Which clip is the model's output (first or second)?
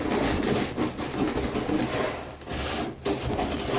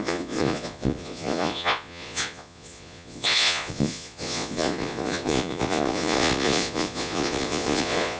second